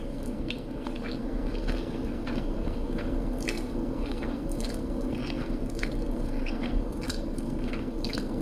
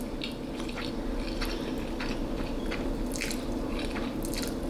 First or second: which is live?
second